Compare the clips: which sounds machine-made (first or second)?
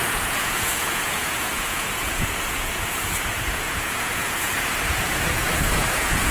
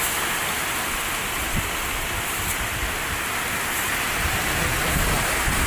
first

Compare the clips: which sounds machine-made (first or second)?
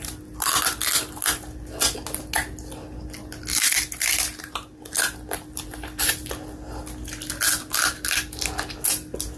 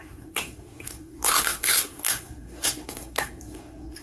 second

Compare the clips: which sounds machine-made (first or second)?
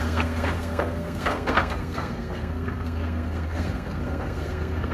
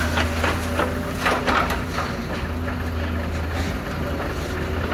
first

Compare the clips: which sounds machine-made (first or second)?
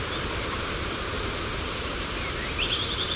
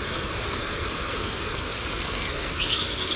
second